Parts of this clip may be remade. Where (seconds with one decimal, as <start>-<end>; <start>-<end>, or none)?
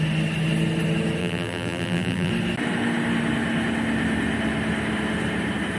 1.2-2.3